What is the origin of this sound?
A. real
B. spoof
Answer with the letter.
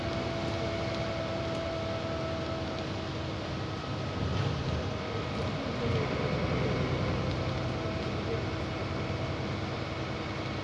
A